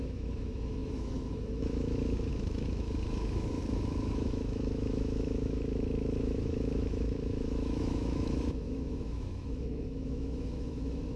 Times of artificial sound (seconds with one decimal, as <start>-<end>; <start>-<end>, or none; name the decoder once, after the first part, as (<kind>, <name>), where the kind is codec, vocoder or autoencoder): 0.0-11.2 (autoencoder, DAC-VAE)